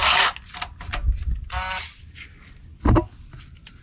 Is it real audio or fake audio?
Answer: real